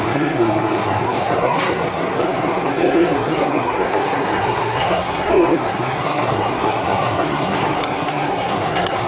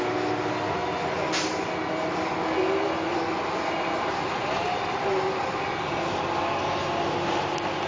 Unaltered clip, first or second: second